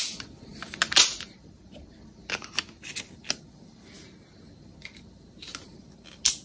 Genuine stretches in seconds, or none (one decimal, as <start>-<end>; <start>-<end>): 0.0-6.4